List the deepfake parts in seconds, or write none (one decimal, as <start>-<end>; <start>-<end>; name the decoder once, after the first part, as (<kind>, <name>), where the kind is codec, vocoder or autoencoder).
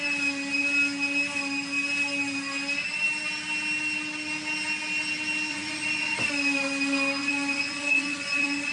5.5-6.3 (vocoder, Vocos); 7.2-8.7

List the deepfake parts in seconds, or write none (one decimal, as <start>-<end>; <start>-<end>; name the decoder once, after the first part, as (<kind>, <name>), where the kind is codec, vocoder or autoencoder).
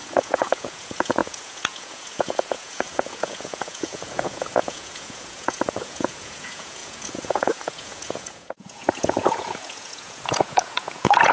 0.0-11.3 (vocoder, Vocos)